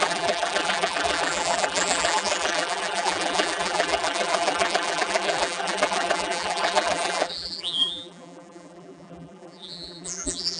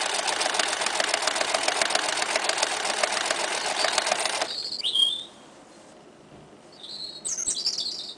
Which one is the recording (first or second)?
second